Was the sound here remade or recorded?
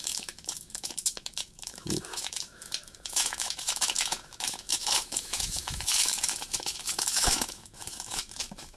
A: remade